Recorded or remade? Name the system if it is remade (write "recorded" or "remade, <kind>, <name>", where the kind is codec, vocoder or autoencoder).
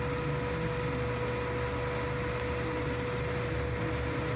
recorded